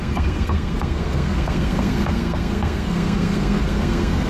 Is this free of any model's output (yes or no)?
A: no